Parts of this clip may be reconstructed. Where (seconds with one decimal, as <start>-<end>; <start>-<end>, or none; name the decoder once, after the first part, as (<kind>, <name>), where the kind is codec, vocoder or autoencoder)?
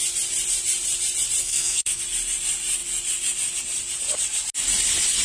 1.4-2.0 (codec, SNAC)